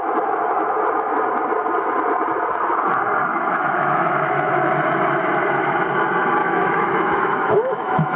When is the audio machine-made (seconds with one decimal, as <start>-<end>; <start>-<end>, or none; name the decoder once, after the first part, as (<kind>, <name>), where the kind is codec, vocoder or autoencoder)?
3.3-4.7 (autoencoder, DAC-VAE); 6.4-8.2